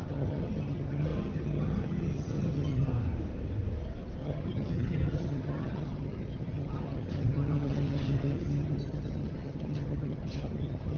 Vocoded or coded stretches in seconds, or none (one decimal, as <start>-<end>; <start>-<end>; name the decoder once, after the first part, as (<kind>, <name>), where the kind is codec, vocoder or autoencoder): 0.0-2.9 (vocoder, HiFi-GAN); 4.2-11.0